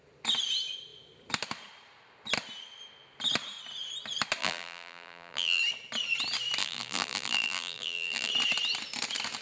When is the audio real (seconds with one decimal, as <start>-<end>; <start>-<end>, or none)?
0.0-4.4; 5.6-6.6; 8.3-9.4